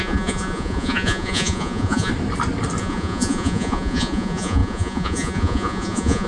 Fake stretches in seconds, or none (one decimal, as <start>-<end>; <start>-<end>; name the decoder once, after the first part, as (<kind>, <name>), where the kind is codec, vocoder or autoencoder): 0.0-2.1 (vocoder, Vocos); 2.8-6.3